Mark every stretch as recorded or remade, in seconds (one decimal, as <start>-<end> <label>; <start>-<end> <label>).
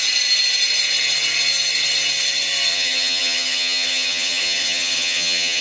0.0-2.7 recorded; 2.7-5.6 remade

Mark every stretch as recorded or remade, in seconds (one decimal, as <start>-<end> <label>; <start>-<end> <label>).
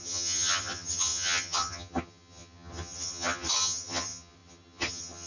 0.0-5.3 remade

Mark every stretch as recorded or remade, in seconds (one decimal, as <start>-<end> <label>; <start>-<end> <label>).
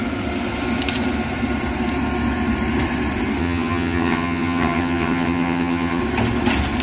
0.0-3.4 recorded; 3.4-6.0 remade; 6.0-6.8 recorded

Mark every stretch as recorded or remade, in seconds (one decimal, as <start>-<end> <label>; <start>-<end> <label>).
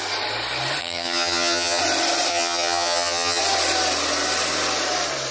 0.0-0.8 recorded; 0.8-1.8 remade; 1.8-2.3 recorded; 2.3-3.4 remade; 3.4-5.3 recorded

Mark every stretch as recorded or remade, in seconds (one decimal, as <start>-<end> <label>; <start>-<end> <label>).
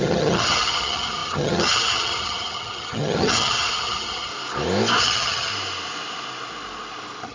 0.0-4.3 remade; 4.3-5.0 recorded; 5.0-5.5 remade; 5.5-7.3 recorded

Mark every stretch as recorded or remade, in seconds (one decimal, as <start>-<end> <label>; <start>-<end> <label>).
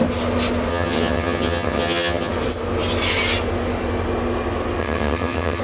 0.0-0.7 recorded; 0.7-2.3 remade; 2.3-4.8 recorded; 4.8-5.6 remade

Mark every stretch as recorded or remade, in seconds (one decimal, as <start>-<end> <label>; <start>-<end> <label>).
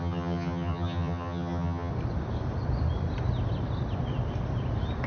0.0-1.9 remade; 1.9-5.1 recorded